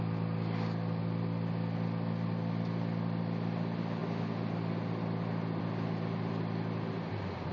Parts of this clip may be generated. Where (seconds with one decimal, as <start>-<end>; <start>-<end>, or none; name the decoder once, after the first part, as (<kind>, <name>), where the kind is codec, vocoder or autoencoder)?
none